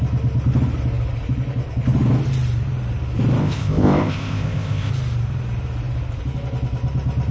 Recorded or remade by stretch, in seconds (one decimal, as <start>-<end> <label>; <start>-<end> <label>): 0.0-3.4 recorded; 3.4-4.9 remade; 4.9-7.3 recorded